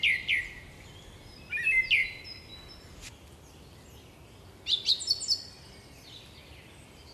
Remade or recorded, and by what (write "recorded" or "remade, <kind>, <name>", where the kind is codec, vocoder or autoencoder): recorded